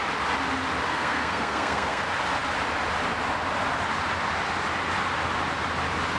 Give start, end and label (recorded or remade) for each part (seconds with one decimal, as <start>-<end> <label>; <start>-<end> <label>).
0.0-0.9 recorded; 0.9-2.0 remade; 2.0-6.2 recorded